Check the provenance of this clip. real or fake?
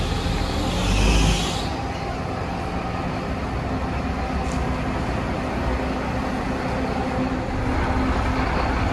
real